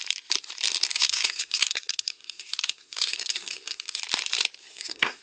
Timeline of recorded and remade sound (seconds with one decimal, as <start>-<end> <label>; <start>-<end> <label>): 0.0-0.9 recorded; 0.9-4.0 remade; 4.0-4.6 recorded; 4.6-5.2 remade